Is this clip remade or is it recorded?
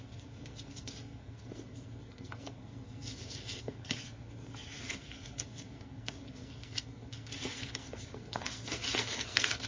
remade